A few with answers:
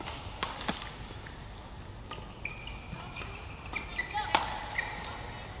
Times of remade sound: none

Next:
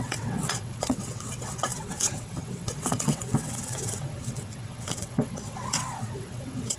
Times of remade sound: 0.0-6.8 (vocoder, WaveNeXt)

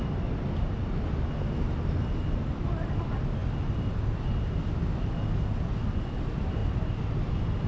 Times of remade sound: none

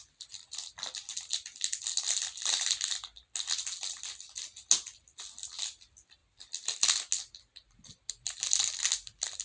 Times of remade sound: none

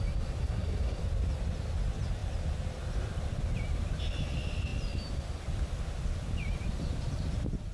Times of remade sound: 0.4-1.0 (codec, SNAC)